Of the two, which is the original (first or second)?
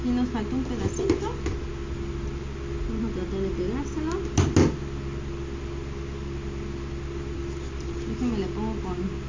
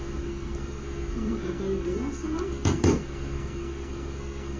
first